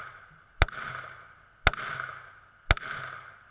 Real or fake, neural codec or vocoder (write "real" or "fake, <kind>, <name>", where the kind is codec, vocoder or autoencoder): real